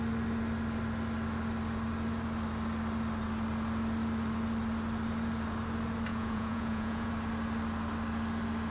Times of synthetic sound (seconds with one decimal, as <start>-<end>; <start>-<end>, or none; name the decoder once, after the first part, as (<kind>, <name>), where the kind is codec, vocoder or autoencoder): 6.1-7.1 (vocoder, Vocos)